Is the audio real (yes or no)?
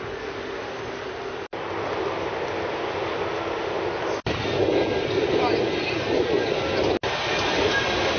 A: yes